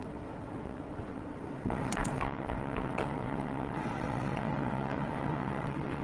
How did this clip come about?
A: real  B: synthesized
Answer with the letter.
B